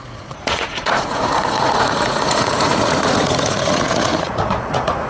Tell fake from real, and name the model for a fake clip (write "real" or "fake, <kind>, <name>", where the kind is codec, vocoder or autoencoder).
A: fake, vocoder, Vocos